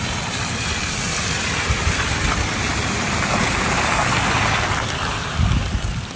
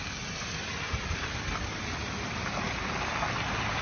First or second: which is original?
second